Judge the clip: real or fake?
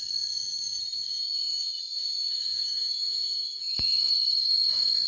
fake